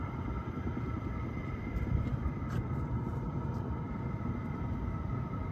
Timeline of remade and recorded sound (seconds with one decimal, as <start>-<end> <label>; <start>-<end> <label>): 0.0-5.5 remade